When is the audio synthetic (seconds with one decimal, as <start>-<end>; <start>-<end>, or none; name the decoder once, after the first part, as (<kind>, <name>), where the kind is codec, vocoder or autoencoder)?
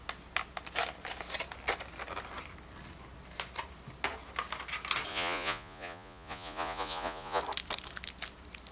5.1-7.4 (vocoder, Vocos)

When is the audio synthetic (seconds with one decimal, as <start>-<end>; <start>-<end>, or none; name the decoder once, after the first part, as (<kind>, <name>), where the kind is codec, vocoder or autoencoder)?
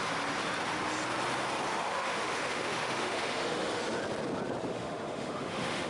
1.7-3.8 (autoencoder, DAC-VAE); 4.7-5.9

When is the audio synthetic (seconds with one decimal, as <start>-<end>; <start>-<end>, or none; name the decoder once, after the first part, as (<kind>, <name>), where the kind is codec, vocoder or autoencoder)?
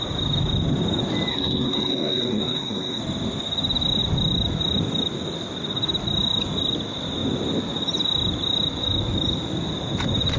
1.3-3.0 (codec, SNAC)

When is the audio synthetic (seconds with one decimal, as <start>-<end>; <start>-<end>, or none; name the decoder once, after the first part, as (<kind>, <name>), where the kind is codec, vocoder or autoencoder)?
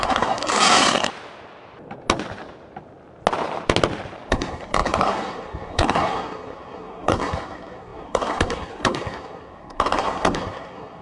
0.0-1.1 (codec, SNAC); 4.3-11.0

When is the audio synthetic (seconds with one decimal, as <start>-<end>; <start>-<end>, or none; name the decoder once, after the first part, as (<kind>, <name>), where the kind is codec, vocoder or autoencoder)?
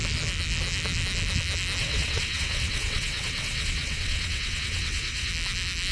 1.8-5.3 (vocoder, WaveNeXt)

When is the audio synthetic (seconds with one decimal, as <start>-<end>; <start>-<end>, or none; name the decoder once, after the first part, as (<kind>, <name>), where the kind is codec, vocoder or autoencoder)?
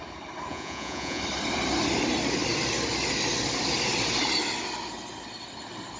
0.5-1.2 (vocoder, Vocos)